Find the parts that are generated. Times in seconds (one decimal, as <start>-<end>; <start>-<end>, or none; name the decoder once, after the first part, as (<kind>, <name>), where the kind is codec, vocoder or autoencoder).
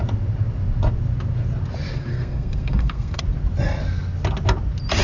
2.1-3.2 (codec, SNAC)